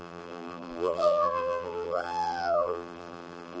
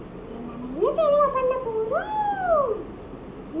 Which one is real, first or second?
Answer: second